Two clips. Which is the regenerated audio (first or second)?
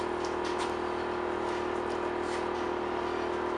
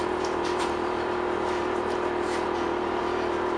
second